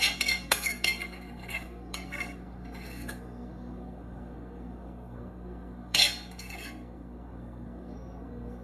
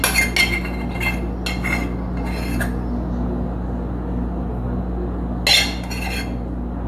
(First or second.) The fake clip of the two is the first